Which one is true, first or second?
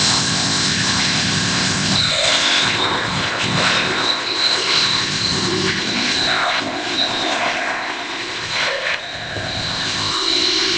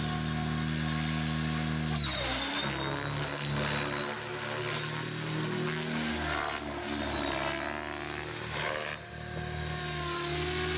second